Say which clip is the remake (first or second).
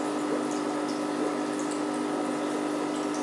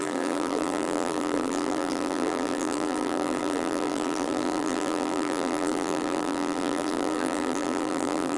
second